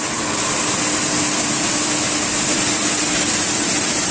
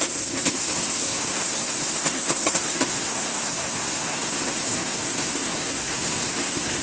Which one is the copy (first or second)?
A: second